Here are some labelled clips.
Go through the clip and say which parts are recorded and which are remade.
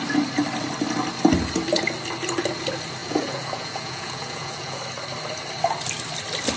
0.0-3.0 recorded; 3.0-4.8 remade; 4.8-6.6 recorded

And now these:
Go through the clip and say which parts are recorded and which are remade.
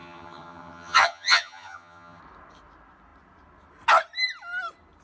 0.0-2.2 remade; 2.2-5.0 recorded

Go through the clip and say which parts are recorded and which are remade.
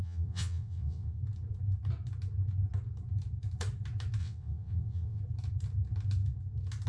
0.0-1.2 remade; 1.2-4.2 recorded; 4.2-5.2 remade; 5.2-6.9 recorded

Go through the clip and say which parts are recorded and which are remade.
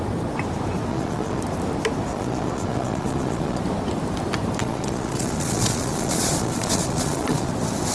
0.0-0.9 recorded; 0.9-1.4 remade; 1.4-2.1 recorded; 2.1-3.6 remade; 3.6-4.6 recorded; 4.6-7.5 remade; 7.5-7.9 recorded